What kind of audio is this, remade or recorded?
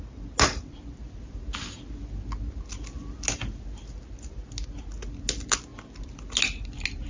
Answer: recorded